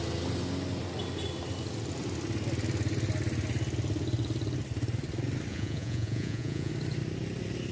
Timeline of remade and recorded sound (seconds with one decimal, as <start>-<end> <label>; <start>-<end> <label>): 0.0-5.5 recorded; 5.5-6.7 remade; 6.7-7.7 recorded